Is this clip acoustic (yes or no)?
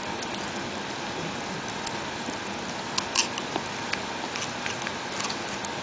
yes